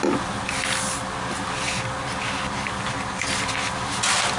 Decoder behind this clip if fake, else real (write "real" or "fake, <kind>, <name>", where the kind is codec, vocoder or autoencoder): real